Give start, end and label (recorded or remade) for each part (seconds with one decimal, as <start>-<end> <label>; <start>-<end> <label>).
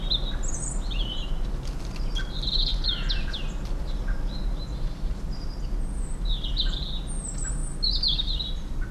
0.0-8.9 recorded